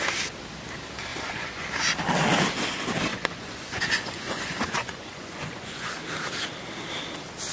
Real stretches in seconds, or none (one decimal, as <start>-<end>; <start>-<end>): 0.0-1.1; 1.7-3.1; 6.0-7.5